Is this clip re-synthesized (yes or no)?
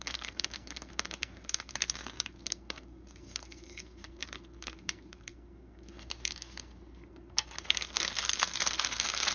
yes